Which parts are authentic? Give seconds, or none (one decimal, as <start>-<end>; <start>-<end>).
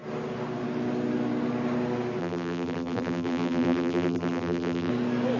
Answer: 0.0-2.2; 4.9-5.4